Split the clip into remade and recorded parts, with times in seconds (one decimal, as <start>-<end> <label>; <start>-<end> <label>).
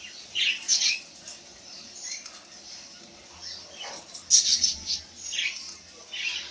0.0-6.5 recorded